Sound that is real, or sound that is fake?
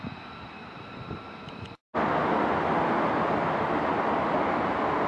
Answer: real